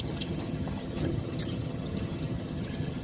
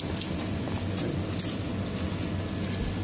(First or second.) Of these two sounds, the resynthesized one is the first